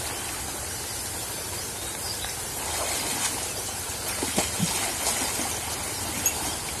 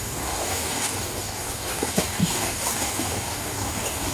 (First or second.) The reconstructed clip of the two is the second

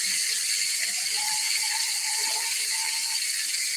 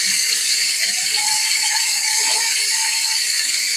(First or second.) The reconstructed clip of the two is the second